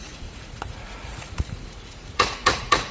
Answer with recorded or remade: remade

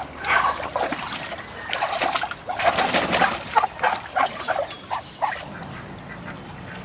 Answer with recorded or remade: recorded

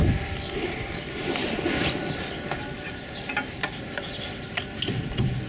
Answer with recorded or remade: recorded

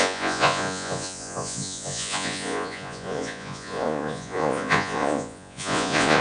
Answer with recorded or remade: remade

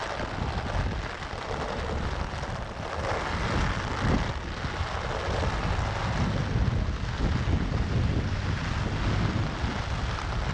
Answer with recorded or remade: recorded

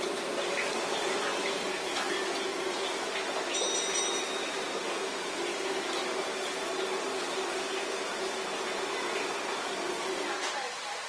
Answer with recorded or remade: recorded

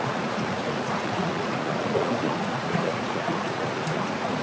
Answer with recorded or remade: remade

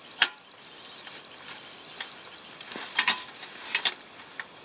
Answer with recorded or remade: recorded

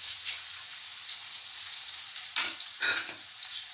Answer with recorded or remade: remade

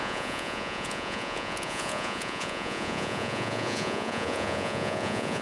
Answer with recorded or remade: remade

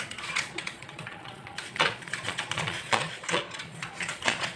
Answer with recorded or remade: remade